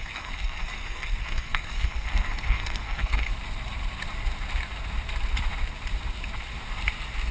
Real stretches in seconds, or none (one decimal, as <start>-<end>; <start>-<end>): 3.3-7.3